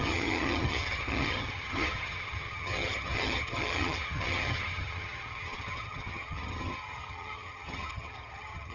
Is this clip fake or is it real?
fake